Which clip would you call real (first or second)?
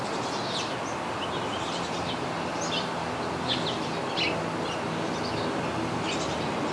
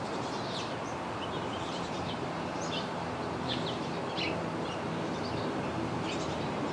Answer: first